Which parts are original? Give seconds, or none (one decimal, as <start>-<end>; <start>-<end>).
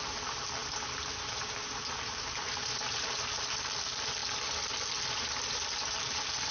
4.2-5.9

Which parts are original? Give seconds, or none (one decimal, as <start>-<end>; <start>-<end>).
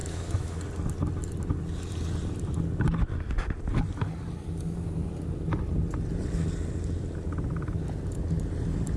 0.6-9.0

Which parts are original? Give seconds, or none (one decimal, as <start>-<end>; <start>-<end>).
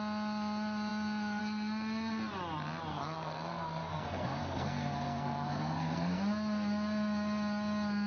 0.0-2.9; 6.2-8.1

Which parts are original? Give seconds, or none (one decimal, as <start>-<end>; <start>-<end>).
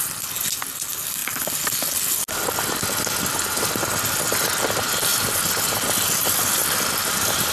0.0-7.5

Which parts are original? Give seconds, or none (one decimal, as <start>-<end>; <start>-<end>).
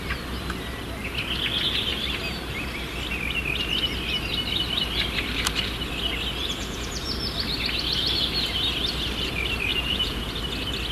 0.0-6.4; 7.1-9.7; 10.3-10.9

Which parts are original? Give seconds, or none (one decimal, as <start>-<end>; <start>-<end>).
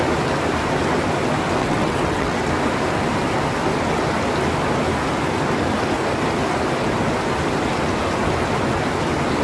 0.0-1.6; 2.5-9.4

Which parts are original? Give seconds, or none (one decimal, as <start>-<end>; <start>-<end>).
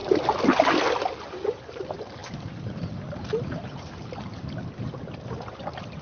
0.0-6.0